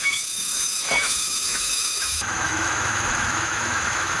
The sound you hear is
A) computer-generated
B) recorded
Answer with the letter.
A